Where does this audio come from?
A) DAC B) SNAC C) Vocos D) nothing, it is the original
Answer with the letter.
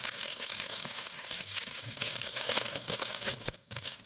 A